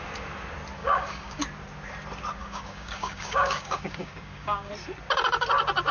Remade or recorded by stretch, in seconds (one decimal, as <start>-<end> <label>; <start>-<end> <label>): 0.0-0.8 recorded; 0.8-1.4 remade; 1.4-2.4 recorded; 2.4-4.7 remade; 4.7-5.9 recorded